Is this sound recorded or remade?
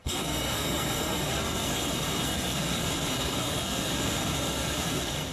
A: remade